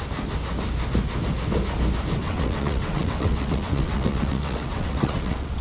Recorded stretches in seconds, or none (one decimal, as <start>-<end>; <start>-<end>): 0.0-2.2